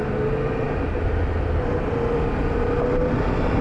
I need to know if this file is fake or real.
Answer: real